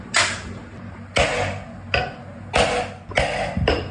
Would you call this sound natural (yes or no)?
yes